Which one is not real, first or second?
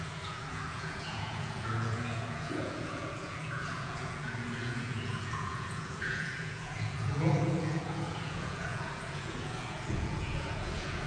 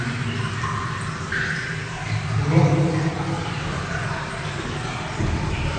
first